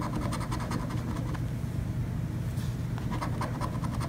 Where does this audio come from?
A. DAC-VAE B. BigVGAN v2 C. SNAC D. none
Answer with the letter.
D